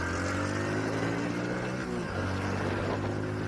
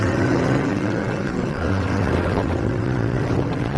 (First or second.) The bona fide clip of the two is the first